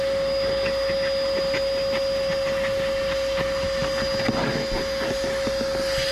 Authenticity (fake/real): real